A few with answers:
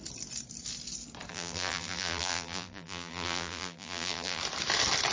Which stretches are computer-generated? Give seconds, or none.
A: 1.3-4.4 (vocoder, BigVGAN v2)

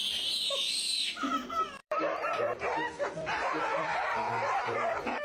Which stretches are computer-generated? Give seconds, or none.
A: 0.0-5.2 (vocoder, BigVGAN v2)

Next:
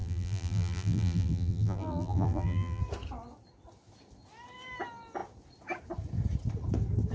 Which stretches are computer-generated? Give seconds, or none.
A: 0.0-2.8 (vocoder, BigVGAN v2)

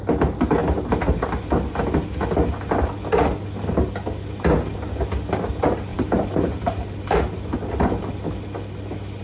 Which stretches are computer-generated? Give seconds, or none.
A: 5.9-7.2 (vocoder, BigVGAN v2)